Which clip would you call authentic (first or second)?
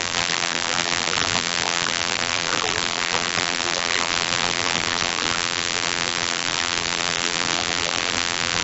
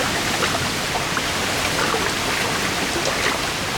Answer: second